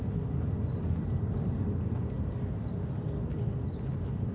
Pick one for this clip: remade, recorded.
recorded